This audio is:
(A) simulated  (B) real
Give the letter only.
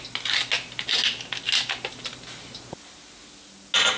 B